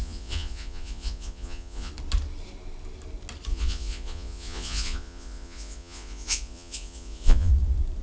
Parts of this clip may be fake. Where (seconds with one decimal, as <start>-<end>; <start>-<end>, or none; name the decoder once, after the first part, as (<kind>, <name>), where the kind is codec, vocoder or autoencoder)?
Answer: 0.0-1.9 (vocoder, Vocos); 3.5-7.5